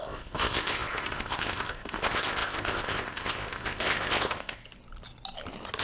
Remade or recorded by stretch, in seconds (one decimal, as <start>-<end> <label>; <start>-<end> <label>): 0.0-4.6 remade; 4.6-5.8 recorded